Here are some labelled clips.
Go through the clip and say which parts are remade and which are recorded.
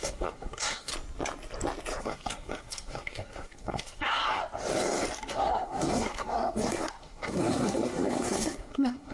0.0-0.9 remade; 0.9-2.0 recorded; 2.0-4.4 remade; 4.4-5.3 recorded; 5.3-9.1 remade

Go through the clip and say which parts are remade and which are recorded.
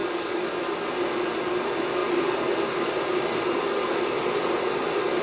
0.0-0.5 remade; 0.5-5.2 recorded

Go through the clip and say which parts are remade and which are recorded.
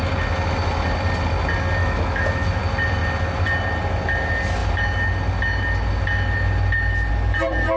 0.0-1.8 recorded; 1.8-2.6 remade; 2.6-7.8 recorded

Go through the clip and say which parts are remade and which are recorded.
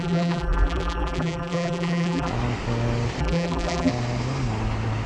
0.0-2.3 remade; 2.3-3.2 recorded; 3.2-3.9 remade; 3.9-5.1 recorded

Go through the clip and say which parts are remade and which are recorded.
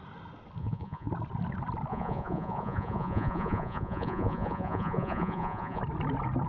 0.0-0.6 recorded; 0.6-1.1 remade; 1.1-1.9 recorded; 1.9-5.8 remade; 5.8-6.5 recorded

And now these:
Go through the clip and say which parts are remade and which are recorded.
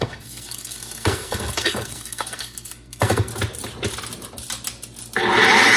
0.0-3.3 remade; 3.3-5.8 recorded